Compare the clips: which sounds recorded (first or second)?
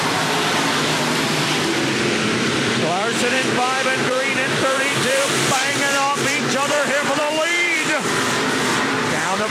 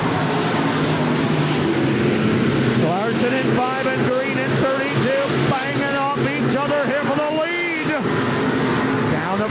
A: second